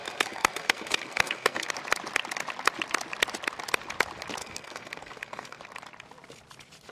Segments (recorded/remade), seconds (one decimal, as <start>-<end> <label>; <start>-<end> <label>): 0.0-1.7 remade; 1.7-4.4 recorded; 4.4-5.6 remade; 5.6-6.9 recorded